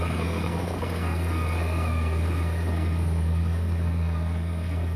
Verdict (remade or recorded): remade